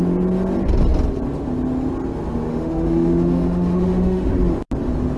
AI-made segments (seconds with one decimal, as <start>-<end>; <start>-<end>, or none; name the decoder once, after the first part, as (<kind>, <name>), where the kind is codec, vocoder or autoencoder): 2.5-4.3 (autoencoder, DAC-VAE)